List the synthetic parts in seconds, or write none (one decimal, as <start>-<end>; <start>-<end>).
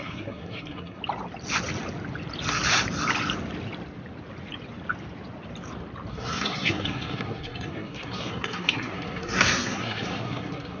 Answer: 0.0-1.0; 6.1-10.8